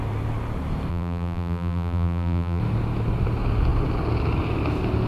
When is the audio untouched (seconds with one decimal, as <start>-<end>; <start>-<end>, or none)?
0.0-0.9; 2.6-5.1